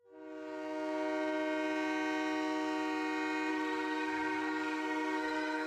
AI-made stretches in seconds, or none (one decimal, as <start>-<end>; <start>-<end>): 3.5-5.7